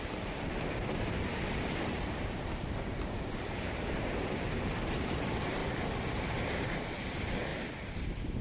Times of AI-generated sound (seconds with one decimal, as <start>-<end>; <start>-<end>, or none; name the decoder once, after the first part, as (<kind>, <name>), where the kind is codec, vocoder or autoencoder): 0.0-5.6 (vocoder, BigVGAN v2); 6.2-7.5; 8.0-8.4